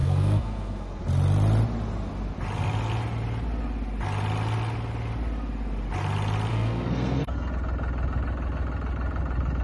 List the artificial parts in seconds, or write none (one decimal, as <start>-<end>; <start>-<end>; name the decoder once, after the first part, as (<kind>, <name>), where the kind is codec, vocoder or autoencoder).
0.0-1.0 (codec, SNAC); 6.5-7.5